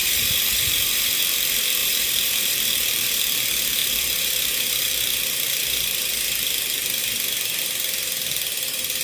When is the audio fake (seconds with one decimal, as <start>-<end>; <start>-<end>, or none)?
0.0-1.2; 1.8-3.2; 3.8-6.1